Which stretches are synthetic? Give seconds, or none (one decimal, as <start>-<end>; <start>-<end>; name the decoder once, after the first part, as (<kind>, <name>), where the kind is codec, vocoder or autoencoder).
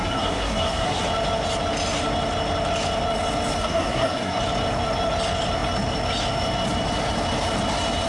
0.0-1.0 (codec, SNAC); 3.6-4.4